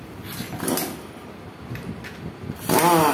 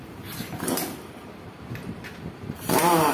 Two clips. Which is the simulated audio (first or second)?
second